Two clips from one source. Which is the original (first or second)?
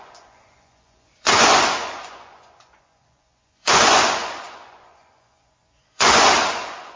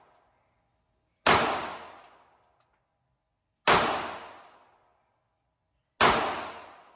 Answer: second